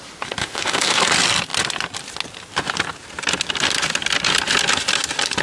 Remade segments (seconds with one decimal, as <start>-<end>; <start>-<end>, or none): 0.4-1.0